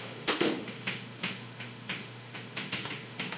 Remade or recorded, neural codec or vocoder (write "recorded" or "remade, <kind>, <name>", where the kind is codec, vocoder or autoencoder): remade, autoencoder, DAC-VAE